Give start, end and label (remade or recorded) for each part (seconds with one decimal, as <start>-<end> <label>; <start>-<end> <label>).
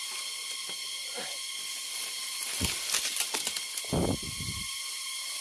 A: 0.0-5.4 recorded